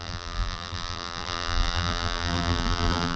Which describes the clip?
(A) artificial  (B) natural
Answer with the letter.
A